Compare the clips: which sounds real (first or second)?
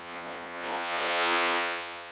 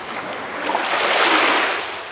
second